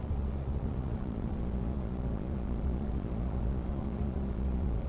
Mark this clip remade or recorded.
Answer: remade